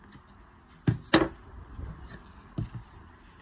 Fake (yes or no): no